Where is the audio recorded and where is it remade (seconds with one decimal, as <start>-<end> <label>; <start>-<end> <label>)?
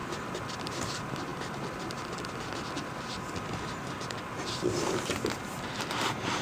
0.0-6.4 recorded